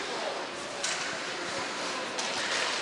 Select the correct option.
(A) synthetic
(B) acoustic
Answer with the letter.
B